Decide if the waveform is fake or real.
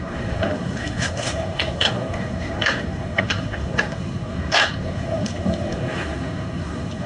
fake